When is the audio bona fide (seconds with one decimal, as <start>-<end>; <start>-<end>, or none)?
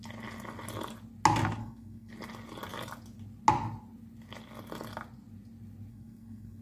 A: 0.0-1.6; 2.1-5.9